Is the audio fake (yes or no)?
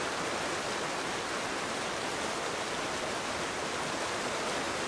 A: no